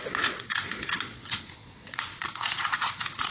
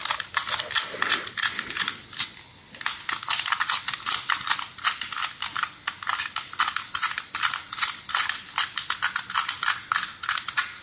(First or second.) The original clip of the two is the second